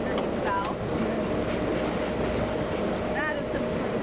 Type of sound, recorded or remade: recorded